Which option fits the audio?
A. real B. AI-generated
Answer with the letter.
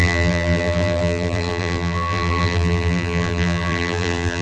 B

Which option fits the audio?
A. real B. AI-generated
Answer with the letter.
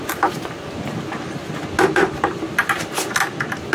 A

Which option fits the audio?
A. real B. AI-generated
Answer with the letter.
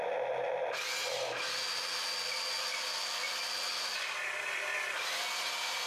A